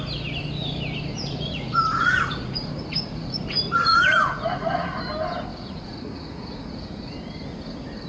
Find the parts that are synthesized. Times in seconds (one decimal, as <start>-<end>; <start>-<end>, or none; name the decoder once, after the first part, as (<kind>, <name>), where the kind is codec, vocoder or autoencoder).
1.1-5.0 (vocoder, Vocos); 5.5-7.0